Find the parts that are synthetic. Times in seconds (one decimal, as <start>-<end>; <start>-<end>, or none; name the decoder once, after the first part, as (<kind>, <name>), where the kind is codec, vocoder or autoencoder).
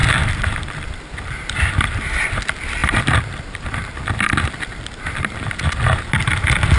0.0-1.7 (vocoder, BigVGAN v2); 2.8-5.2